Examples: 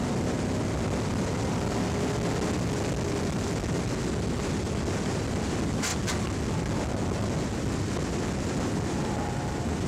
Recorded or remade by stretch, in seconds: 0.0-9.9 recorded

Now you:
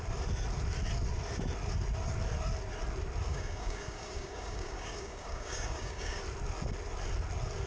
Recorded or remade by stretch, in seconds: 0.0-3.3 recorded; 3.3-6.2 remade; 6.2-7.7 recorded

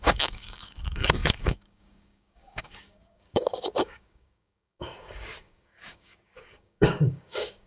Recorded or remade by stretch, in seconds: 0.0-7.7 remade

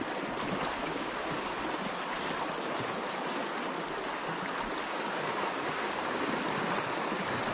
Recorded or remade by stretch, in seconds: 0.0-0.8 recorded; 0.8-1.4 remade; 1.4-4.8 recorded; 4.8-6.3 remade; 6.3-7.5 recorded